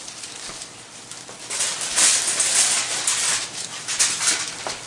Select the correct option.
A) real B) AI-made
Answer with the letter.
B